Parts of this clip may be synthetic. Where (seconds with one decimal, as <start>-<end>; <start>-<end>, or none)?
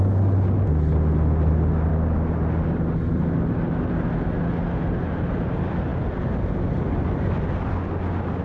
none